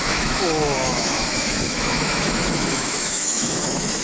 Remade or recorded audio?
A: remade